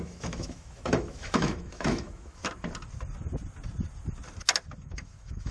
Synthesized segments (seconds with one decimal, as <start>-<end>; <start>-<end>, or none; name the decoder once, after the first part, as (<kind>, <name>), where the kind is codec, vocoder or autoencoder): 0.0-2.4 (autoencoder, DAC-VAE); 4.8-5.5